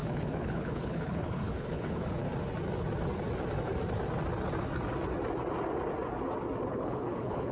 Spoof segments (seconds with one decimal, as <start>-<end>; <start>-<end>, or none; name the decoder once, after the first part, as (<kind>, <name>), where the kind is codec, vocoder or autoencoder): 0.0-2.2 (codec, HILCodec); 6.7-7.5